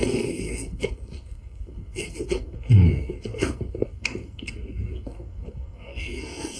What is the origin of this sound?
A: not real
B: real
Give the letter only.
A